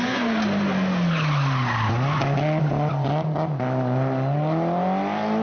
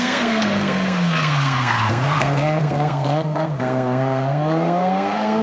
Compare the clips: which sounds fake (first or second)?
second